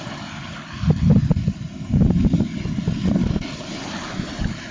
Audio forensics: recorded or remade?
recorded